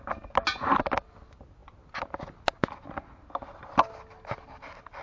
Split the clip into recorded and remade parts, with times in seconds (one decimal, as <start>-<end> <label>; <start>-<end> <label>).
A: 0.0-5.0 recorded